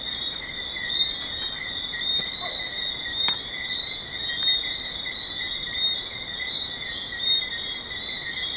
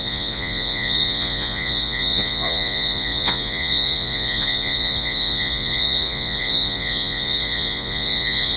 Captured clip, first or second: first